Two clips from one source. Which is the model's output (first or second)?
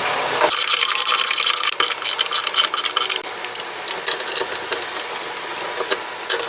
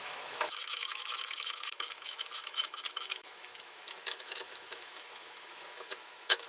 second